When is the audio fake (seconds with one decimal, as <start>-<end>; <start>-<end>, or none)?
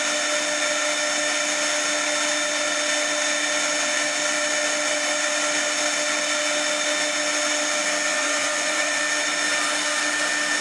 8.1-9.0